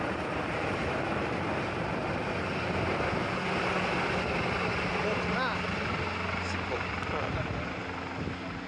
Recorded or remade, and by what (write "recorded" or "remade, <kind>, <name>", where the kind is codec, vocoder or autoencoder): recorded